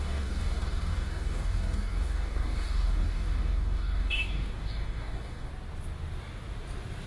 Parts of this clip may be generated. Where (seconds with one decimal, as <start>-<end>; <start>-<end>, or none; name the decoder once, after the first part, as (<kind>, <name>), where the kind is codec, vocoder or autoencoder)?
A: 0.0-5.5 (codec, DAC)